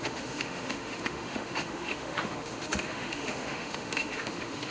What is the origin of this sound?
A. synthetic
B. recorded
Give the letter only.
A